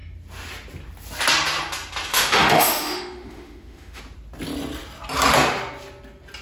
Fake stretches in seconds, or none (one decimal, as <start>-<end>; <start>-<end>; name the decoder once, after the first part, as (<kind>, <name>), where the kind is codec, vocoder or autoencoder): 2.1-4.0 (autoencoder, DAC-VAE)